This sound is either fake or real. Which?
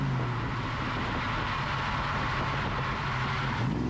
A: real